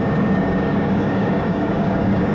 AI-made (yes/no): yes